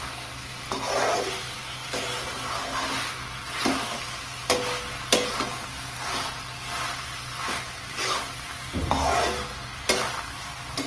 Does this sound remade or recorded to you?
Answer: recorded